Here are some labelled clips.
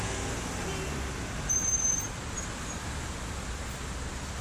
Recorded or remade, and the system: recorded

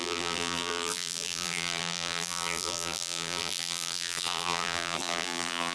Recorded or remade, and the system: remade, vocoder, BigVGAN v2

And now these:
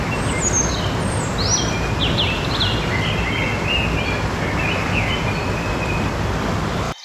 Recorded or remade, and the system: recorded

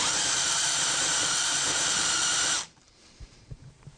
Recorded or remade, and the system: remade, vocoder, BigVGAN v2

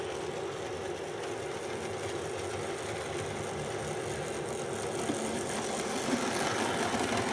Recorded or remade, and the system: recorded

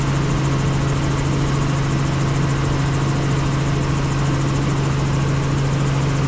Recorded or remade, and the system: recorded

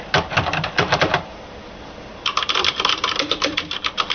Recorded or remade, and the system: remade, vocoder, BigVGAN v2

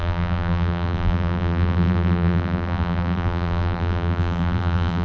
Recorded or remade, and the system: remade, vocoder, BigVGAN v2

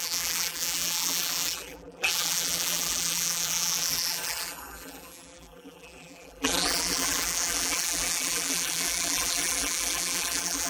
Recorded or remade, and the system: remade, vocoder, BigVGAN v2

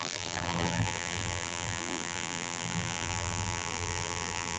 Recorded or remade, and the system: remade, vocoder, BigVGAN v2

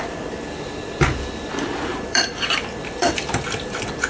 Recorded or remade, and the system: remade, vocoder, BigVGAN v2